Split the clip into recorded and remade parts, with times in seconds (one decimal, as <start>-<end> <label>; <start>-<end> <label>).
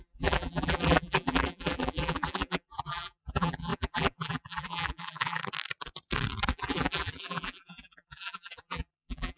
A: 0.0-5.4 remade; 5.4-6.5 recorded; 6.5-9.4 remade